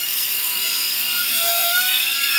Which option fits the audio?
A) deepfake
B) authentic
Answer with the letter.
A